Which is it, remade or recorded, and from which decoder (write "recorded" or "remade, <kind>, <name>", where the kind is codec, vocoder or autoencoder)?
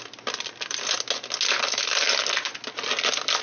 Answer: recorded